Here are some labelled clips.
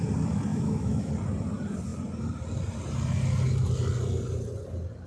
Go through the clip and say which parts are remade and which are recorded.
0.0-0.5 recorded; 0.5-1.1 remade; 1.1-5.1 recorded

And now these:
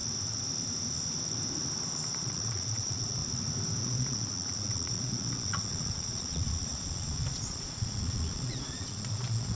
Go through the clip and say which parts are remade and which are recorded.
0.0-2.1 recorded; 2.1-3.2 remade; 3.2-3.8 recorded; 3.8-9.5 remade

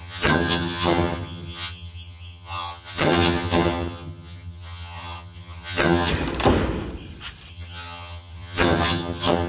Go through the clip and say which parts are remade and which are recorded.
0.0-6.1 remade; 6.1-7.5 recorded; 7.5-9.5 remade

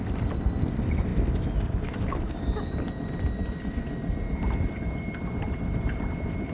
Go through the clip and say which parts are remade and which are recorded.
0.0-6.5 recorded

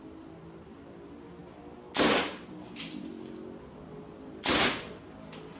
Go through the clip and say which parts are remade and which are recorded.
0.0-5.6 recorded

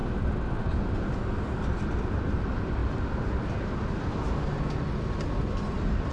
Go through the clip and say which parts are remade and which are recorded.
0.0-0.6 recorded; 0.6-2.8 remade; 2.8-6.1 recorded

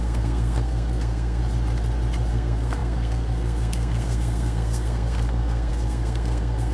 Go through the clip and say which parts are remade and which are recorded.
0.0-1.4 remade; 1.4-2.3 recorded; 2.3-6.7 remade